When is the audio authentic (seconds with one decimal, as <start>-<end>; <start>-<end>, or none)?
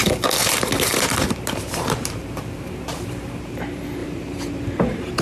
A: 0.0-0.4; 3.5-4.0